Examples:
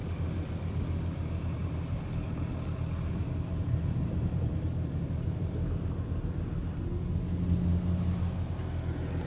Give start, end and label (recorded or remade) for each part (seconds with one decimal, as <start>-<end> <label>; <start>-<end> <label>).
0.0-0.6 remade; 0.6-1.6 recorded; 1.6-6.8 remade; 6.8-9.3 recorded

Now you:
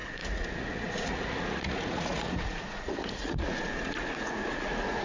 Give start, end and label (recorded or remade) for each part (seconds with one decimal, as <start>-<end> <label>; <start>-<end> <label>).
0.0-5.0 remade

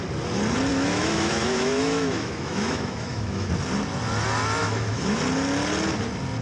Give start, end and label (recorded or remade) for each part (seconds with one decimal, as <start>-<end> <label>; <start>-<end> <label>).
0.0-0.7 recorded; 0.7-3.5 remade; 3.5-4.6 recorded; 4.6-5.2 remade; 5.2-6.4 recorded

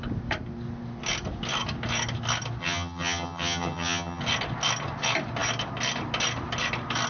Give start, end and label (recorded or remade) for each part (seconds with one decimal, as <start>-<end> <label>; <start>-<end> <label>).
0.0-2.6 recorded; 2.6-4.2 remade; 4.2-7.1 recorded

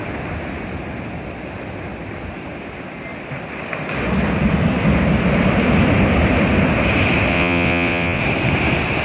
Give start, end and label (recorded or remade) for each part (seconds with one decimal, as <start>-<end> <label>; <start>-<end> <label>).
0.0-7.3 recorded; 7.3-8.2 remade; 8.2-9.0 recorded

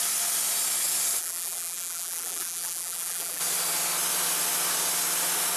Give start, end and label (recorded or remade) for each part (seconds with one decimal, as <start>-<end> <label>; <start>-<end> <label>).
0.0-1.2 recorded; 1.2-3.4 remade; 3.4-5.6 recorded

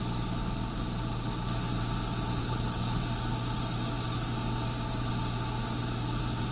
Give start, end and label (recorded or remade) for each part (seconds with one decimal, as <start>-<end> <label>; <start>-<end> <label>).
0.0-2.4 recorded; 2.4-3.0 remade; 3.0-6.5 recorded